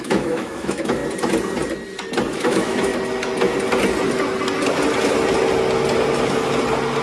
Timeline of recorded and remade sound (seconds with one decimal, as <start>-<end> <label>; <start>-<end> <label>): 0.0-1.0 remade; 1.0-2.3 recorded; 2.3-2.9 remade; 2.9-7.0 recorded